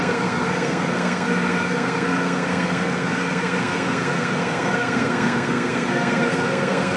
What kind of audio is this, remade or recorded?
remade